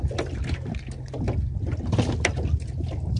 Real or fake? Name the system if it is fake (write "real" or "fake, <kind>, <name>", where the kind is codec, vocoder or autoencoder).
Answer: real